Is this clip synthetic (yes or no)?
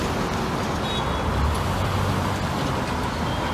no